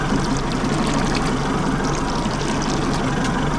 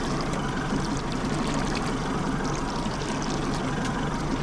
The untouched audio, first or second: first